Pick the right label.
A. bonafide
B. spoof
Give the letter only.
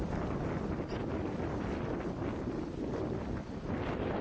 A